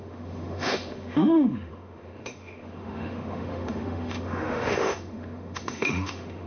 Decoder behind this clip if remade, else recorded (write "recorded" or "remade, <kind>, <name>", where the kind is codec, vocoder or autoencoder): remade, autoencoder, DAC-VAE